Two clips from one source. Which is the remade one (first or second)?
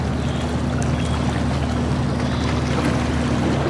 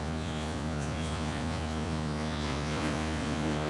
second